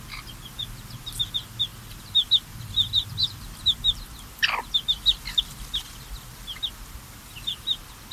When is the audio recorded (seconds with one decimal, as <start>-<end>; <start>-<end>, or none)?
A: 0.0-8.1